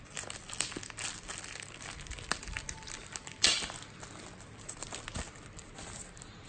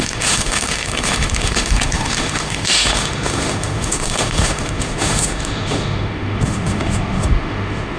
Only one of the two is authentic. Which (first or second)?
first